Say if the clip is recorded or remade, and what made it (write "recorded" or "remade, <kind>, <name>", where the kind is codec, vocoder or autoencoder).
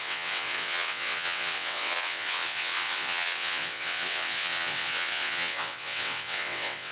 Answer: remade, vocoder, WaveNeXt